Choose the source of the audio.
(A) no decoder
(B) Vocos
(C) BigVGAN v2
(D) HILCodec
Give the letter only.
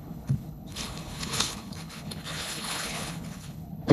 D